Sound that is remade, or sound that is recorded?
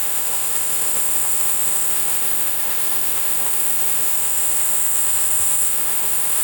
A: remade